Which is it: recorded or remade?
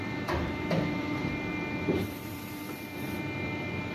remade